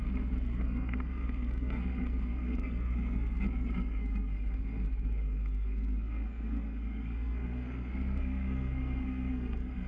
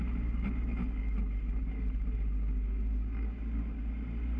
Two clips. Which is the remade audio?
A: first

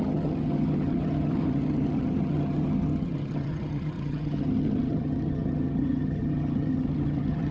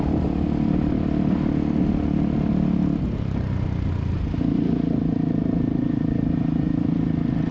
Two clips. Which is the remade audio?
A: first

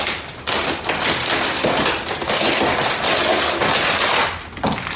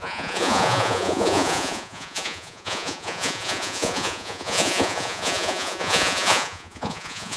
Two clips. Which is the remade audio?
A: second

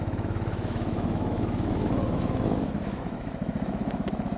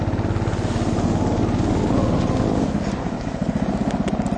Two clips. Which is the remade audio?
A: first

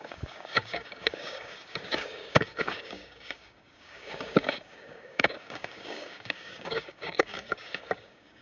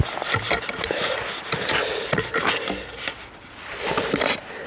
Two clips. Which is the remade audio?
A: first